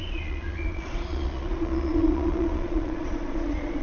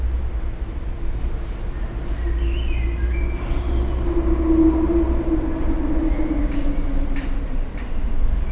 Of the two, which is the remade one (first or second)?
first